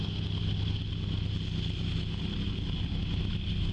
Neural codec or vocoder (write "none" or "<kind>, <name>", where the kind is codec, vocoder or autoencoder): none